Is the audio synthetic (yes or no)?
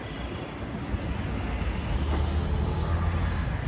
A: no